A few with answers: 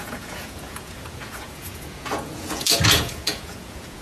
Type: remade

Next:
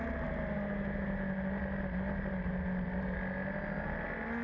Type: recorded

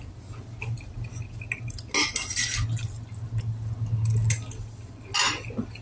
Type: recorded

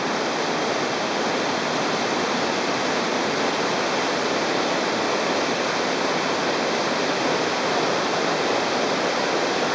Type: recorded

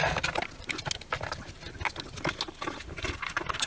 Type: recorded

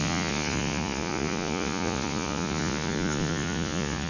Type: remade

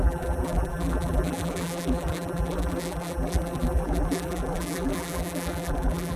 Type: remade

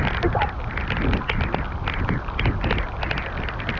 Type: recorded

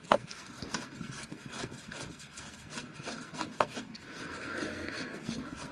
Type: remade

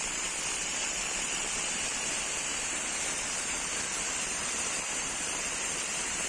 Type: remade